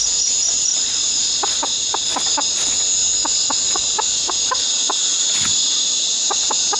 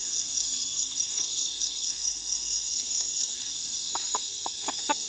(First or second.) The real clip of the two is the first